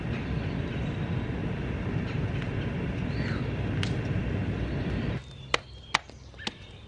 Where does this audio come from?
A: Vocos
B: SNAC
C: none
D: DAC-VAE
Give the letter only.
C